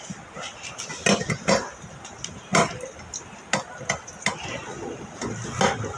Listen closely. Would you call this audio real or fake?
real